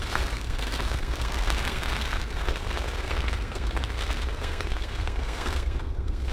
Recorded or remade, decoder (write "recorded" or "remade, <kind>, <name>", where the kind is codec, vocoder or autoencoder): remade, codec, SNAC